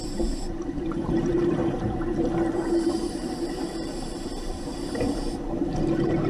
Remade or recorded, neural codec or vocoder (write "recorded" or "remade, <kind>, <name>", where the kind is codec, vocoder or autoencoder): remade, vocoder, BigVGAN v2